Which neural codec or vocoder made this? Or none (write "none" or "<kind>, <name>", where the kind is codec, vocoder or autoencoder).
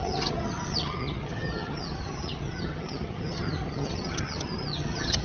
vocoder, HiFi-GAN